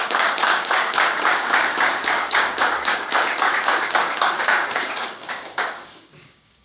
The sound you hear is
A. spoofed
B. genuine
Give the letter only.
A